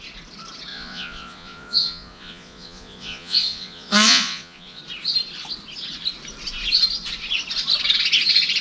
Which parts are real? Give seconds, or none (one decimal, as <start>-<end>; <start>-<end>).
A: 0.0-0.7; 4.8-8.6